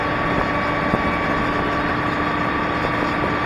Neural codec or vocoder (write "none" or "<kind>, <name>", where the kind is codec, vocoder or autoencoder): none